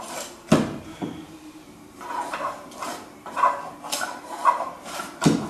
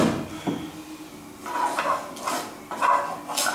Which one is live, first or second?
second